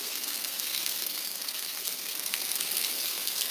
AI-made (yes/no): yes